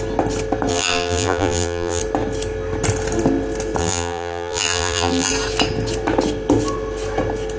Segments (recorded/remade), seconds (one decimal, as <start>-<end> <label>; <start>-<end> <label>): 0.0-0.7 recorded; 0.7-2.0 remade; 2.0-3.8 recorded; 3.8-5.3 remade; 5.3-7.6 recorded